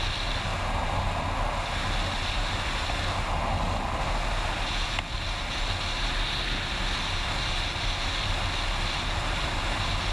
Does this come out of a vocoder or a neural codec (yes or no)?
no